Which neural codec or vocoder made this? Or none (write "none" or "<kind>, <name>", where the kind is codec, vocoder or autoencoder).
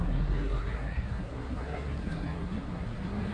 codec, SNAC